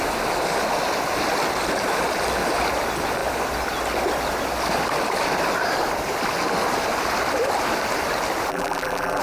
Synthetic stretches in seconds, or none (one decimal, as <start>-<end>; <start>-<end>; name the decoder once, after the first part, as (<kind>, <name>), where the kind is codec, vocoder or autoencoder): 8.5-9.2 (vocoder, BigVGAN v2)